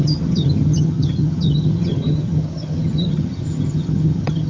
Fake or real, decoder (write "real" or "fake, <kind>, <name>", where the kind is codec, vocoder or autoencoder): fake, vocoder, HiFi-GAN